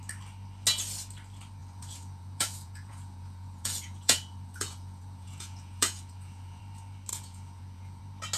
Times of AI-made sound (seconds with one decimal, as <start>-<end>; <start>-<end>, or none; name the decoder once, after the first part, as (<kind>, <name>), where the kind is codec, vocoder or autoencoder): 1.6-6.6 (vocoder, Vocos); 7.1-8.0